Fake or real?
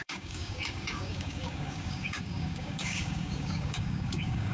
fake